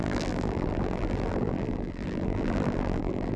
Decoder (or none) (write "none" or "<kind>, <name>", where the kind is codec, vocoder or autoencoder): vocoder, BigVGAN v2